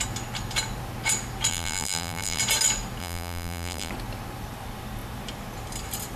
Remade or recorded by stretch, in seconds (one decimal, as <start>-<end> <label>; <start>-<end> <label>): 0.0-1.5 recorded; 1.5-2.4 remade; 2.4-3.0 recorded; 3.0-3.9 remade; 3.9-6.2 recorded